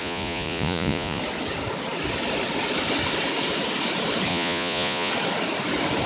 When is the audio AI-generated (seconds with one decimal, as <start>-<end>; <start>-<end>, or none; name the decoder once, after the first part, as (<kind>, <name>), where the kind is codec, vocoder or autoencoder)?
0.0-1.2 (vocoder, Vocos); 4.3-5.1